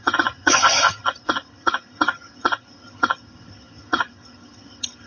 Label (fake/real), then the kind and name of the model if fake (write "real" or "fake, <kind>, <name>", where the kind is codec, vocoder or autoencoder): fake, vocoder, HiFi-GAN